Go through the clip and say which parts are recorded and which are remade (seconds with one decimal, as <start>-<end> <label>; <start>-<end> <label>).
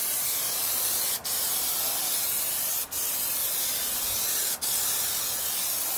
0.0-6.0 recorded